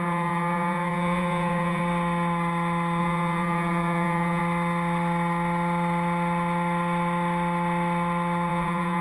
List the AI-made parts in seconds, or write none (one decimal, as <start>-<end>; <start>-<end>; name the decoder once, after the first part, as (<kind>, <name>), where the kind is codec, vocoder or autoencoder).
0.0-1.8 (vocoder, Vocos); 3.0-4.4; 8.5-9.0

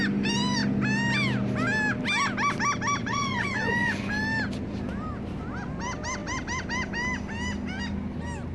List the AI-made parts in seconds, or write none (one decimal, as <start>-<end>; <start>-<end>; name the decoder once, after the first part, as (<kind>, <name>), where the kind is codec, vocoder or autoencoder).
3.0-4.1 (vocoder, Vocos)

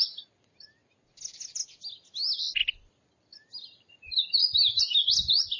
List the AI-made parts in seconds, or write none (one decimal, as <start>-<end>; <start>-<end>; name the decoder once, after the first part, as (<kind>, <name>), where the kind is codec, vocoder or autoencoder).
none

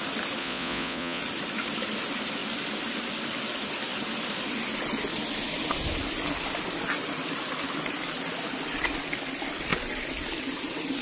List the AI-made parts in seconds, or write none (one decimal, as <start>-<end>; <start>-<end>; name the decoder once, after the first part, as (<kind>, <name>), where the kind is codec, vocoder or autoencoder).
0.4-1.2 (vocoder, Vocos)

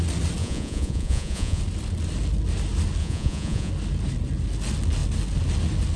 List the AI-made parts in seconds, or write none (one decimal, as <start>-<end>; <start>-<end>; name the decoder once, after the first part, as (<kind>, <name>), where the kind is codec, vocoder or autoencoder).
0.4-1.6 (vocoder, Vocos); 3.0-3.7

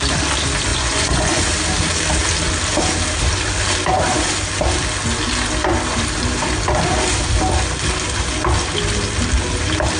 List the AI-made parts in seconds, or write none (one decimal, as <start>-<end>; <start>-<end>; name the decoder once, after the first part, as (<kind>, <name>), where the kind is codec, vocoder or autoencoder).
0.7-1.4 (vocoder, Vocos)